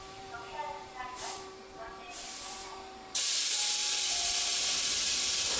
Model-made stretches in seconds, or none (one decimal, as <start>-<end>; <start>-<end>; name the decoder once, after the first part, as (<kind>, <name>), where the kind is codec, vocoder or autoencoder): 0.0-1.6 (vocoder, BigVGAN v2); 2.6-3.3; 3.8-4.4